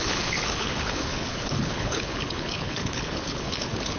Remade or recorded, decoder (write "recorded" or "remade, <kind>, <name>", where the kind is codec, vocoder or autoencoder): remade, codec, HILCodec